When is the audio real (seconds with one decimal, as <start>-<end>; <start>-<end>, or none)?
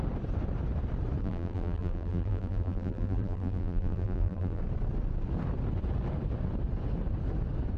0.0-1.2; 4.6-7.8